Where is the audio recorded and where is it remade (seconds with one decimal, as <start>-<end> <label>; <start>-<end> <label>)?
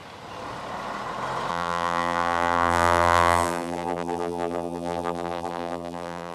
0.0-1.5 recorded; 1.5-6.3 remade